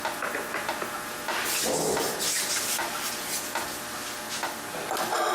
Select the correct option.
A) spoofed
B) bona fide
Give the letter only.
B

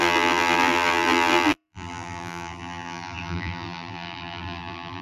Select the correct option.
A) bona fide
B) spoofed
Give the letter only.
B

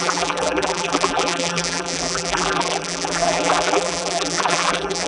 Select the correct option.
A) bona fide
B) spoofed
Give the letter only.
B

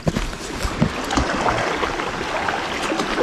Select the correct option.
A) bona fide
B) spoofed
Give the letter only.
A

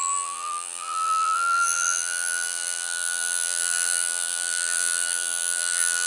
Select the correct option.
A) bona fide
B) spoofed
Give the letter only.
B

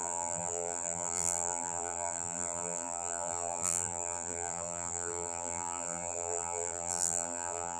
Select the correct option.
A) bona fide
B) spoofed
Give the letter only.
B